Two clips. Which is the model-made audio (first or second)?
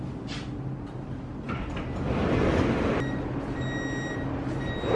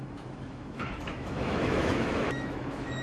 second